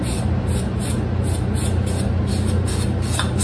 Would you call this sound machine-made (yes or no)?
no